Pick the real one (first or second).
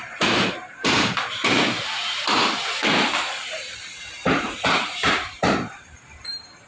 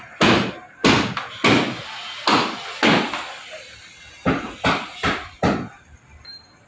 second